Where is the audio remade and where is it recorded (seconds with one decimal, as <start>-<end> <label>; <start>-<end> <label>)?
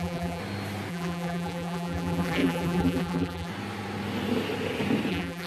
0.0-0.4 remade; 0.4-0.9 recorded; 0.9-3.5 remade; 3.5-5.1 recorded; 5.1-5.5 remade